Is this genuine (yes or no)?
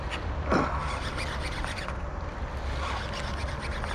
yes